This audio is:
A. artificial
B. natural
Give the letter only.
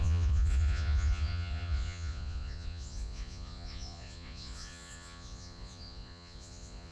A